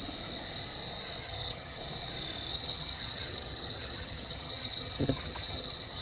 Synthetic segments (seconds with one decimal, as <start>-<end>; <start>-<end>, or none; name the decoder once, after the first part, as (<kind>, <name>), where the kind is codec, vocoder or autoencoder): 1.2-1.8 (vocoder, HiFi-GAN); 2.5-6.0